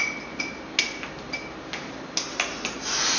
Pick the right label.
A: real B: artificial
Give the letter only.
A